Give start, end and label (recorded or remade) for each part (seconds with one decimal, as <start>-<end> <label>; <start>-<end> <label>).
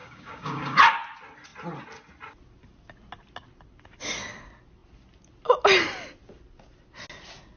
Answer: 0.0-0.8 remade; 0.8-7.6 recorded